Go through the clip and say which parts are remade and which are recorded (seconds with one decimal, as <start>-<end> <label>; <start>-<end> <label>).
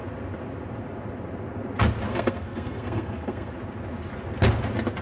0.0-2.1 recorded; 2.1-3.5 remade; 3.5-5.0 recorded